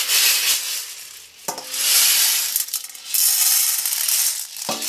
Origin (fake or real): real